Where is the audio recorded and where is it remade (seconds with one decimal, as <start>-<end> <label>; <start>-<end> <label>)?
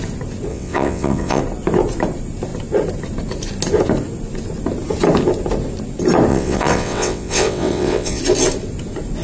0.0-0.5 recorded; 0.5-1.4 remade; 1.4-6.3 recorded; 6.3-8.2 remade; 8.2-9.2 recorded